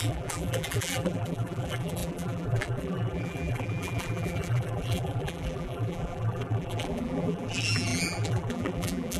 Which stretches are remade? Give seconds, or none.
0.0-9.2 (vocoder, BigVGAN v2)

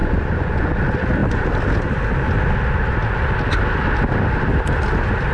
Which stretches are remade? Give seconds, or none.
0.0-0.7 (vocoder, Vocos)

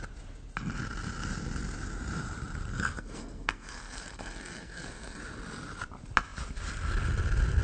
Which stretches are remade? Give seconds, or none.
2.7-5.2 (codec, SNAC)